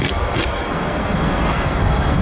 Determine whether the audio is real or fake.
fake